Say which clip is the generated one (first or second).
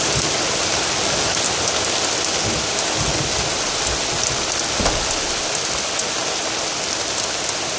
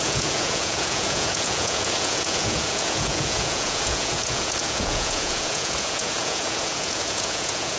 second